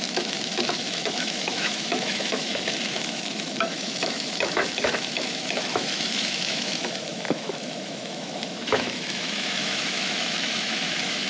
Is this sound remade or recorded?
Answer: remade